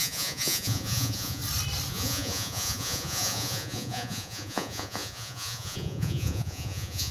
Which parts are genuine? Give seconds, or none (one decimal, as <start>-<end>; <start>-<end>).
1.4-1.9